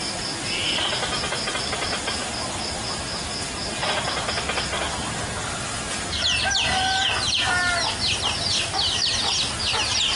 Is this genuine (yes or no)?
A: yes